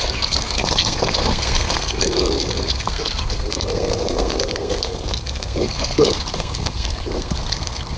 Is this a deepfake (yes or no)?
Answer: yes